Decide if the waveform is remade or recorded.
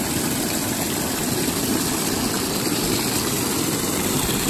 recorded